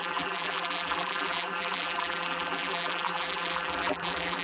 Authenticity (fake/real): fake